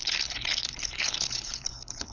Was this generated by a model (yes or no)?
yes